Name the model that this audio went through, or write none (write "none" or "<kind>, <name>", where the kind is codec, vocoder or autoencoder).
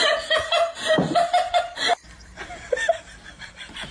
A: none